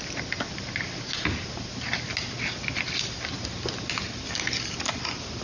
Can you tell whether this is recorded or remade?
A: recorded